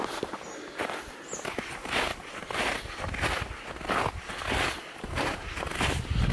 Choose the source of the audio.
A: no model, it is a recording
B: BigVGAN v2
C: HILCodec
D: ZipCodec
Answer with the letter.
A